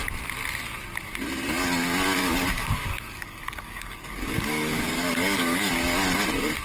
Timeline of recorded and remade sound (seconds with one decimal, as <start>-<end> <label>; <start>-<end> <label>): 0.0-2.2 recorded; 2.2-5.7 remade; 5.7-6.6 recorded

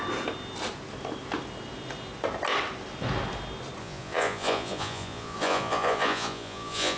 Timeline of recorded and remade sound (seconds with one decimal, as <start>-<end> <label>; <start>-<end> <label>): 0.0-3.8 recorded; 3.8-7.0 remade

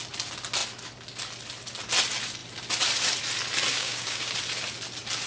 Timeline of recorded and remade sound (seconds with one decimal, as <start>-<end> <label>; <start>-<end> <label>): 0.0-3.7 recorded; 3.7-4.3 remade; 4.3-5.3 recorded

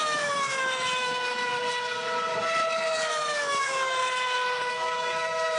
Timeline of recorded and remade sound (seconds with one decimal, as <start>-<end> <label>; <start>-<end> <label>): 0.0-1.5 remade; 1.5-3.1 recorded; 3.1-4.0 remade; 4.0-4.7 recorded; 4.7-5.6 remade

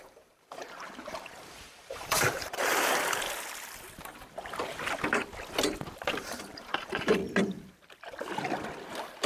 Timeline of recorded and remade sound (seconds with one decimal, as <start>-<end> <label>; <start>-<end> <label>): 0.0-2.7 remade; 2.7-6.1 recorded; 6.1-7.2 remade; 7.2-9.3 recorded

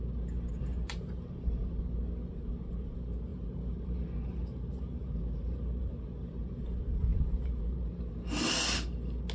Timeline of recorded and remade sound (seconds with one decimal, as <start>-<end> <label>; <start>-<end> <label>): 0.0-0.7 recorded; 0.7-1.8 remade; 1.8-3.3 recorded; 3.3-5.9 remade; 5.9-7.1 recorded; 7.1-8.1 remade; 8.1-9.3 recorded